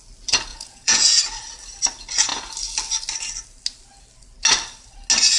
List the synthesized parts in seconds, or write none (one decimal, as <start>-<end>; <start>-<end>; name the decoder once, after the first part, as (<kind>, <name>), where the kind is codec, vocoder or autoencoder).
0.5-1.2 (vocoder, Vocos)